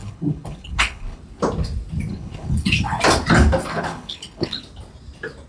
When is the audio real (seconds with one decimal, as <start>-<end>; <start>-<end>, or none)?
1.2-2.1; 3.0-3.6; 4.6-5.5